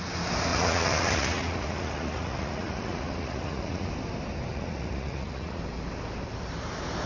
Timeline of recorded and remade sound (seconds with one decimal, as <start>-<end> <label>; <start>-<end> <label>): 0.0-0.5 recorded; 0.5-3.9 remade; 3.9-4.5 recorded; 4.5-5.6 remade; 5.6-7.1 recorded